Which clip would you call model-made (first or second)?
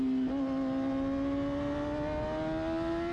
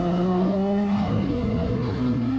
second